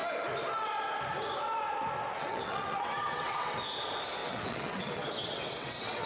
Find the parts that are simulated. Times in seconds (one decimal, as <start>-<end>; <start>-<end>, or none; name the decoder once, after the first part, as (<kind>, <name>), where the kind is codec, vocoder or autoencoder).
2.2-3.5 (vocoder, WaveNeXt); 4.2-6.1